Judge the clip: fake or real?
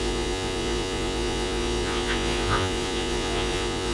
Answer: fake